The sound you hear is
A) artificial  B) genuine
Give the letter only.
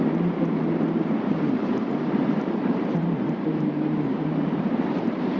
A